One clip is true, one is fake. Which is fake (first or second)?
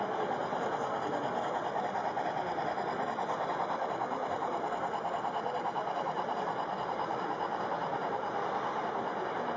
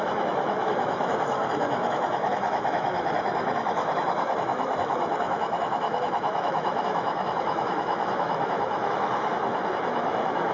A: second